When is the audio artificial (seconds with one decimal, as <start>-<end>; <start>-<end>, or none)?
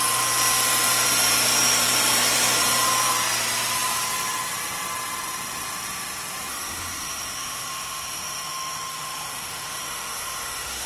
6.5-10.9